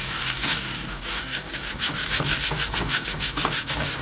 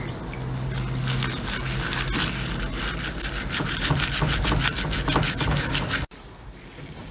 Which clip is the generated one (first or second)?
first